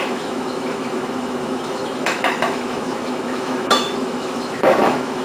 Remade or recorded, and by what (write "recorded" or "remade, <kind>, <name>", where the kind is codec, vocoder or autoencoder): remade, autoencoder, DAC-VAE